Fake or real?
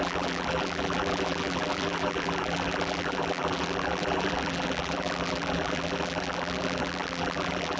fake